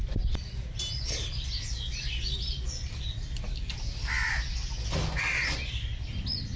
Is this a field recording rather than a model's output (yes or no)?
yes